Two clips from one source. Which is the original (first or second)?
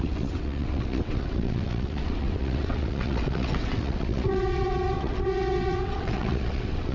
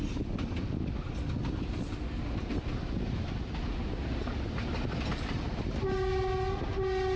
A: second